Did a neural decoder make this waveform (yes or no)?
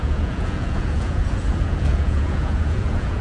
yes